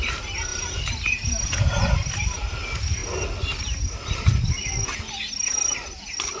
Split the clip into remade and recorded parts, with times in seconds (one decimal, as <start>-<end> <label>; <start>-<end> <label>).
0.0-0.5 recorded; 0.5-2.5 remade; 2.5-6.4 recorded